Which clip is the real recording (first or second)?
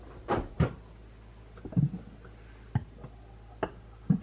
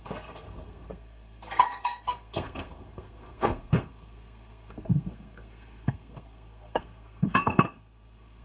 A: first